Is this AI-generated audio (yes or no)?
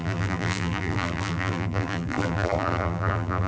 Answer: yes